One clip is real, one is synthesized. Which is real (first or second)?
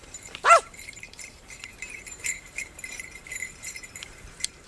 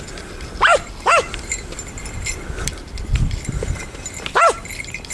second